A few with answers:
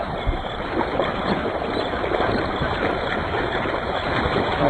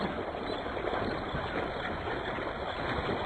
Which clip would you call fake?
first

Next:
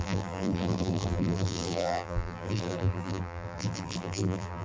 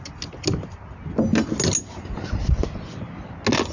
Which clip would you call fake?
first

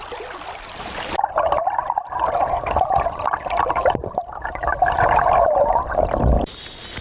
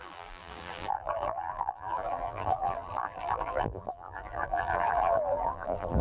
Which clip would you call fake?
second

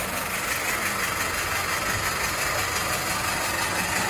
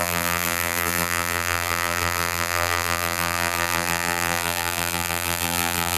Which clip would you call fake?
second